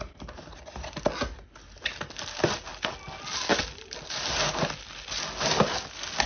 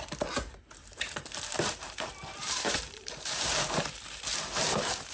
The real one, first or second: first